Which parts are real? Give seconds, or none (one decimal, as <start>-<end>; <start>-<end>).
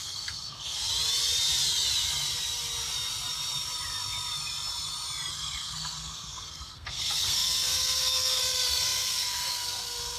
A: 0.9-5.3